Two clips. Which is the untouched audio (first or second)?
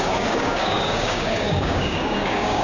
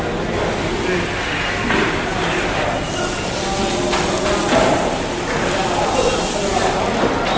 second